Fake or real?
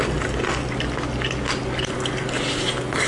real